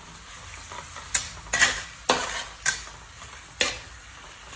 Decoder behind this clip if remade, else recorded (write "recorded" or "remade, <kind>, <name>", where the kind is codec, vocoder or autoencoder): recorded